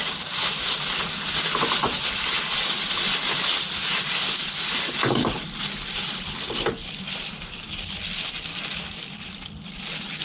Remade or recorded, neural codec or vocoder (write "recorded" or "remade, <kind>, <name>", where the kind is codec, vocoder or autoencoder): recorded